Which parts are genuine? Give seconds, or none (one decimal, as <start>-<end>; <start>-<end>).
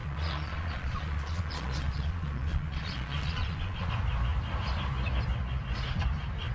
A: 3.9-6.5